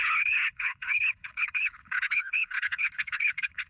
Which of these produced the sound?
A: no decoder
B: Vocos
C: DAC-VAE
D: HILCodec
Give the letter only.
D